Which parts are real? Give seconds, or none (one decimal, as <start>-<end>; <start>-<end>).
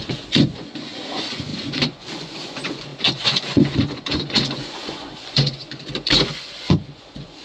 none